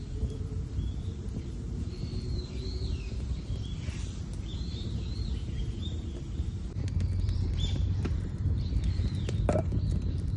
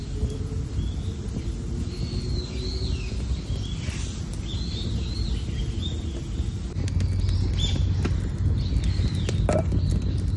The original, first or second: second